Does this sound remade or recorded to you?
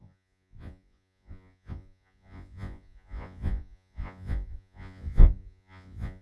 remade